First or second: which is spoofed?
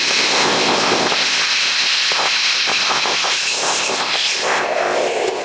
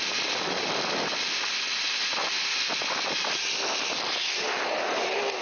first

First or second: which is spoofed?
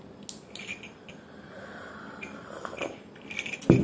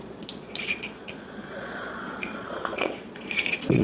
second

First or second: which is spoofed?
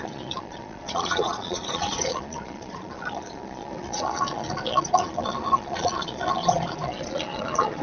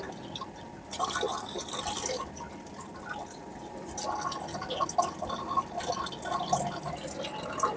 first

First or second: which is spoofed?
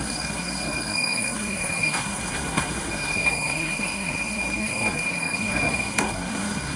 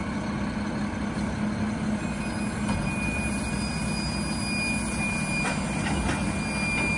first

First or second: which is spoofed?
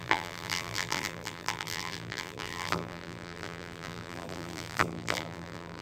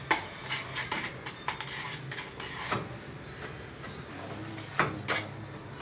first